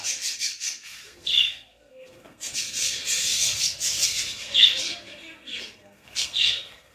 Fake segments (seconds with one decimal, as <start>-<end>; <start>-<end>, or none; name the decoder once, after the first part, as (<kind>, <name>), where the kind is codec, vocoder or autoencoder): 0.0-6.9 (codec, SNAC)